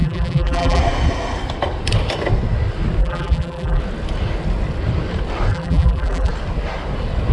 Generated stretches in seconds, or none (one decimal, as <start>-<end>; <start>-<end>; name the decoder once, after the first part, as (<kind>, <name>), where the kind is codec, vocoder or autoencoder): 0.0-0.8 (vocoder, BigVGAN v2); 3.0-3.8; 5.5-6.3